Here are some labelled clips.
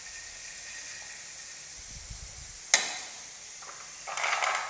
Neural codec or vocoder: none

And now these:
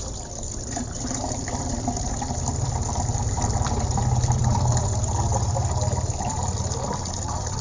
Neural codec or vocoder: vocoder, BigVGAN v2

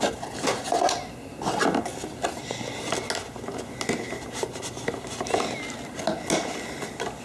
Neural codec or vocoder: none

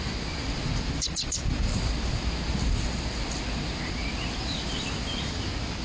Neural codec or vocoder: vocoder, BigVGAN v2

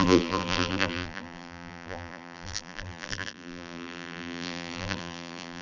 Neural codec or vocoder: vocoder, BigVGAN v2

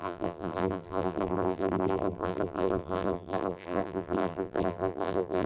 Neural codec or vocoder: vocoder, BigVGAN v2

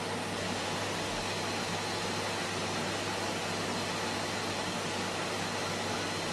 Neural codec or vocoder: none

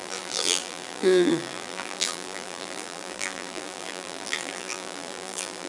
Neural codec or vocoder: vocoder, BigVGAN v2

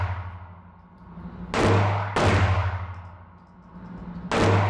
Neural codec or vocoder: none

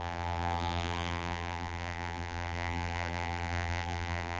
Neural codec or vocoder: vocoder, BigVGAN v2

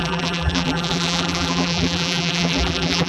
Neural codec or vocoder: vocoder, BigVGAN v2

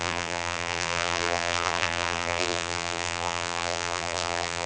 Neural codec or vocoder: vocoder, BigVGAN v2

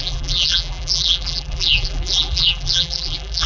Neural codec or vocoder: vocoder, BigVGAN v2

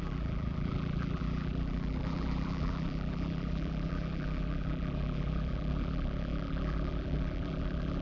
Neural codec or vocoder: vocoder, BigVGAN v2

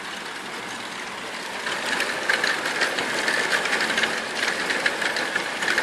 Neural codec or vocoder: none